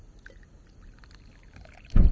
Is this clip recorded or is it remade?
recorded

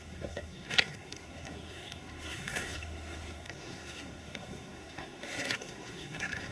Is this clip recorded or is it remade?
remade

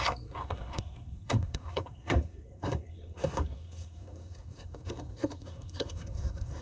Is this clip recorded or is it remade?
remade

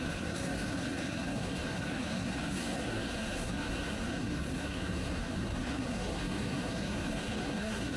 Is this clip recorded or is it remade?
remade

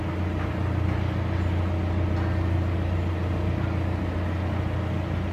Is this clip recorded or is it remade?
recorded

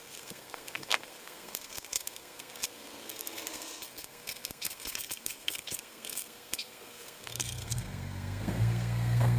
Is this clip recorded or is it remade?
remade